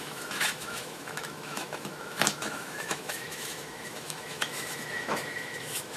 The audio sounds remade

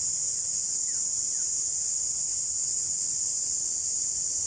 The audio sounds recorded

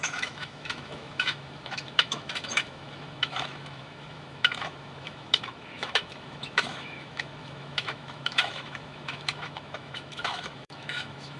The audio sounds remade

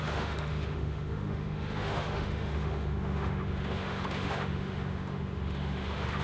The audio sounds remade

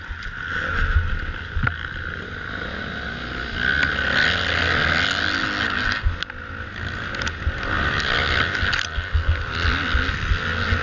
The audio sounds recorded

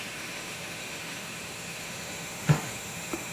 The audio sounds remade